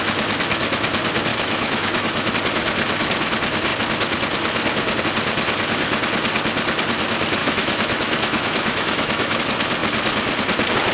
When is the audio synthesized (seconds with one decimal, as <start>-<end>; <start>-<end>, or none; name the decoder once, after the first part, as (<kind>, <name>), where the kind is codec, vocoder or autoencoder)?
1.3-2.3 (autoencoder, DAC-VAE); 7.4-9.4